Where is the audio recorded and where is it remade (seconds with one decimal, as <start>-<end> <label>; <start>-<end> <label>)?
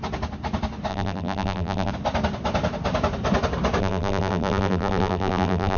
0.0-0.9 recorded; 0.9-1.9 remade; 1.9-3.8 recorded; 3.8-5.8 remade